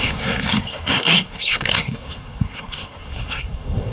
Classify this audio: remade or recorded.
remade